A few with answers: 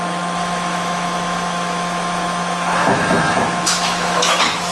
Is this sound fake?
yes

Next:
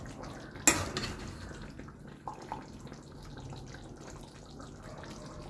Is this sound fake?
no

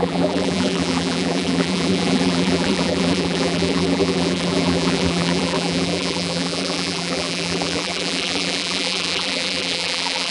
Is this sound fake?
yes